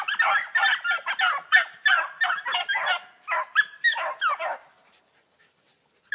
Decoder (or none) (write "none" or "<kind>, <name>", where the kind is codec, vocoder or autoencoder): none